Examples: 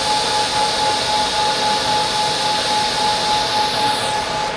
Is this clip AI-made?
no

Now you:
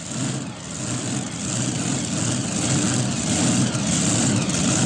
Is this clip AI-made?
no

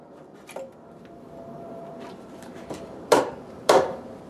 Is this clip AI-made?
yes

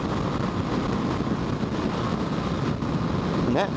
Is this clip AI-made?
no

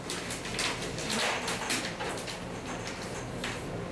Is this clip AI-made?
yes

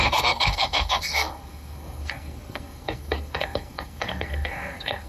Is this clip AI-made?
yes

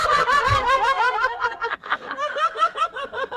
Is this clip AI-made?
yes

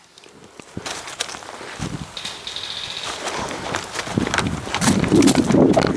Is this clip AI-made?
no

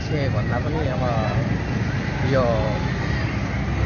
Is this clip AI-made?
no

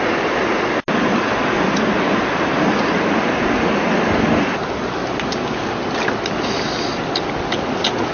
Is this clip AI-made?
no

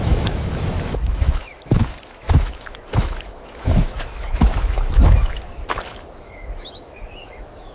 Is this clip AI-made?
yes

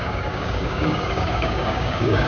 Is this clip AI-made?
yes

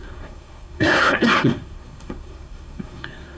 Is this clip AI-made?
yes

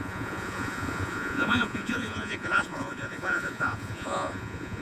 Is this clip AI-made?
yes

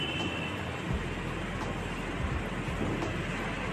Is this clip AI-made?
no